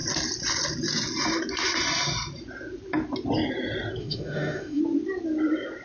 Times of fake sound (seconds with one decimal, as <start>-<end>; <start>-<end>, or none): 4.0-4.8